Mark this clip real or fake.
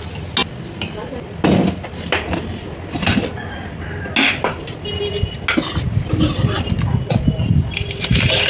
real